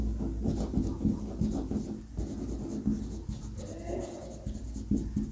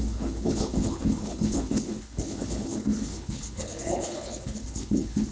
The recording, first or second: first